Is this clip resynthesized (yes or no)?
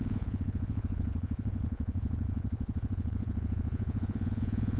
yes